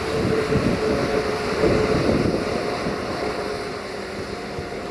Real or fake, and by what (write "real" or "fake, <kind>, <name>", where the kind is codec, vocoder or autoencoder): real